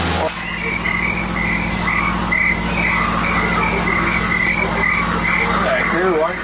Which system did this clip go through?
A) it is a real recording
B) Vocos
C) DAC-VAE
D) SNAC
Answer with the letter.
A